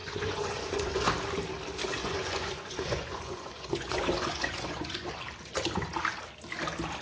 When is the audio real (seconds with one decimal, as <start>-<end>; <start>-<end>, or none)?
1.1-2.0; 5.2-7.0